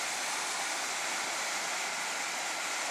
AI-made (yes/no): no